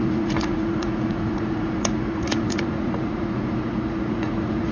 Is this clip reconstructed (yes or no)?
yes